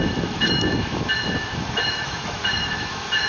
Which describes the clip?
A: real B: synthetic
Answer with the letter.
B